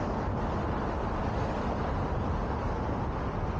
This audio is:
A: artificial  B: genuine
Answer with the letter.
B